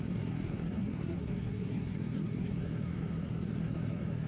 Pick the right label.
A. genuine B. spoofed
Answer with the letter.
B